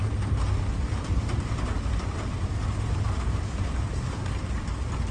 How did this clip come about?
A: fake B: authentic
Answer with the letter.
B